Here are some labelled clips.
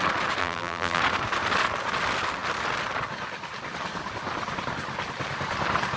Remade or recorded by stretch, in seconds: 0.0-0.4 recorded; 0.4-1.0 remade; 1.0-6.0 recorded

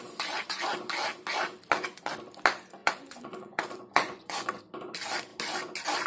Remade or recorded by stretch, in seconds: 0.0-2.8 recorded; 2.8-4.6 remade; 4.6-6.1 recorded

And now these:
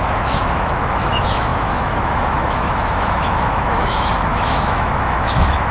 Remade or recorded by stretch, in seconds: 0.0-5.7 remade

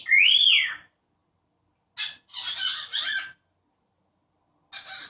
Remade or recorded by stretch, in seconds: 0.0-5.1 recorded

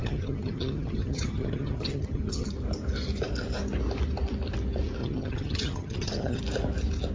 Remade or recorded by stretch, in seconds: 0.0-2.5 remade; 2.5-5.0 recorded; 5.0-6.4 remade; 6.4-7.1 recorded

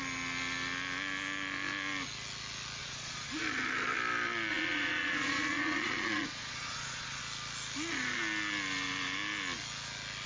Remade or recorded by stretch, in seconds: 0.0-2.8 recorded; 2.8-3.4 remade; 3.4-4.5 recorded; 4.5-7.2 remade; 7.2-10.3 recorded

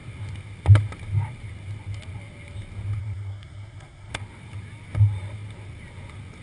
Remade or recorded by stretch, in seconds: 0.0-3.0 recorded; 3.0-4.1 remade; 4.1-6.4 recorded

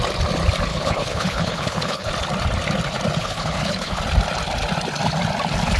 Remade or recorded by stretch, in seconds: 0.0-0.7 recorded; 0.7-2.1 remade; 2.1-3.2 recorded; 3.2-4.0 remade; 4.0-5.8 recorded